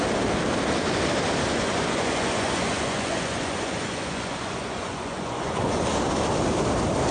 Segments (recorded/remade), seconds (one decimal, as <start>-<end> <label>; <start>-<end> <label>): 0.0-1.5 recorded; 1.5-5.8 remade; 5.8-7.1 recorded